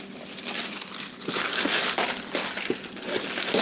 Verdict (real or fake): real